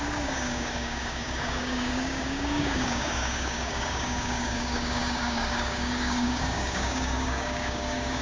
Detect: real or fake fake